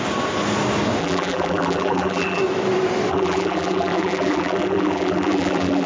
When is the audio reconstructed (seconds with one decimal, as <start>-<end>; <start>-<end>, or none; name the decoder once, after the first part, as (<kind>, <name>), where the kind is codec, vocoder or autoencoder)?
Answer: 1.0-2.4 (vocoder, BigVGAN v2); 3.1-5.9